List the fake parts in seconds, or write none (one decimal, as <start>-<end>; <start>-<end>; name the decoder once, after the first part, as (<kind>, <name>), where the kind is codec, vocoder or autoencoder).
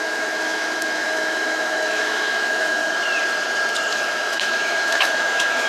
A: 0.0-2.8 (autoencoder, DAC-VAE); 3.9-5.7